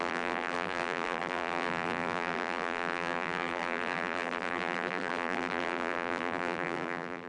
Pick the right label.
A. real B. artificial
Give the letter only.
B